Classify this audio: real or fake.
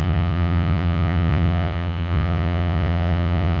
fake